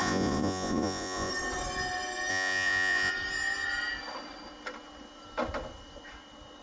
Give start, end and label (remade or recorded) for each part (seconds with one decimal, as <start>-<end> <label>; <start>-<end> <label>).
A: 0.0-1.3 remade; 1.3-2.3 recorded; 2.3-3.1 remade; 3.1-6.6 recorded